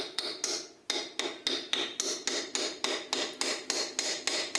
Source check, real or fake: real